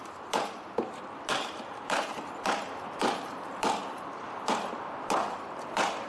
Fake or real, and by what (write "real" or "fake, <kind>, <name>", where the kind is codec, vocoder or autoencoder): real